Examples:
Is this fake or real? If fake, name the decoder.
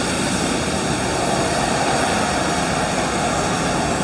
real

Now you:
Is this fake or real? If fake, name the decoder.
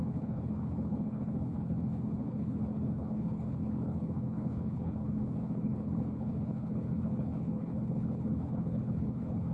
fake, codec, HILCodec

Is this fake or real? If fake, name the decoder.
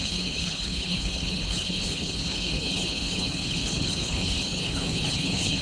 fake, codec, HILCodec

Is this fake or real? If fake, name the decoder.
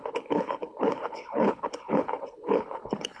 fake, codec, HILCodec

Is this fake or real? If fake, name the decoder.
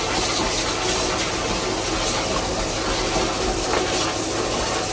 real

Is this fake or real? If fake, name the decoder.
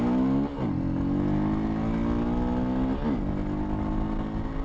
real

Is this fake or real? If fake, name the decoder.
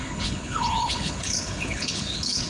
fake, codec, HILCodec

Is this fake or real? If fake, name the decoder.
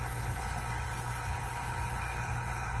fake, codec, HILCodec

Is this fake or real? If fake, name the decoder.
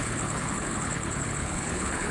fake, codec, HILCodec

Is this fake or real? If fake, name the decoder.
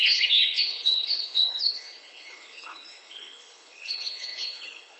fake, codec, HILCodec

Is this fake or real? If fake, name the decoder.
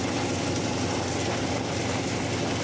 real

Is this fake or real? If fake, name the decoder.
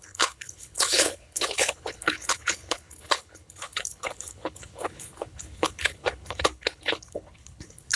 fake, codec, HILCodec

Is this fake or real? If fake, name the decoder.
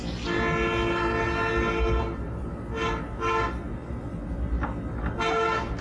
real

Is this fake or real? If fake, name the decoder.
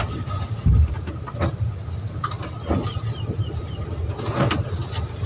real